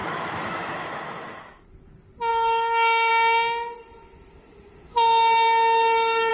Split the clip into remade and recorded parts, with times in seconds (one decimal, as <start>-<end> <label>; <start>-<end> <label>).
0.0-1.7 remade; 1.7-2.3 recorded; 2.3-3.1 remade; 3.1-6.3 recorded